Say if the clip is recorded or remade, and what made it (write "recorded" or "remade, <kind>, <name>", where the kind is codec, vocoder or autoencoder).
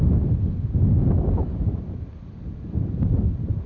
recorded